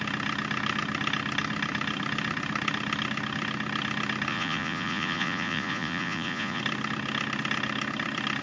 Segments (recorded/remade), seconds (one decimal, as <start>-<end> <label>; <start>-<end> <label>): 0.0-4.3 recorded; 4.3-6.6 remade; 6.6-8.4 recorded